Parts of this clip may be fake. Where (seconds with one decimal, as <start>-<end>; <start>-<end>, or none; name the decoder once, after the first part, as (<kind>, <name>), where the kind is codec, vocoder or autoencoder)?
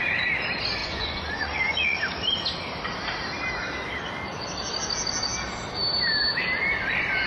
0.8-2.0 (vocoder, Vocos)